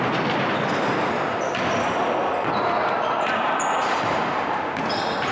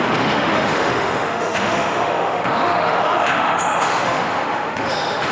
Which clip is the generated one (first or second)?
second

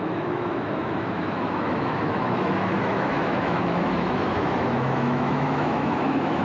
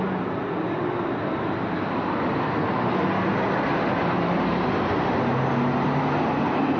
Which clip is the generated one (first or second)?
first